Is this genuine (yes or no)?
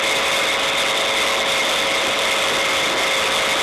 yes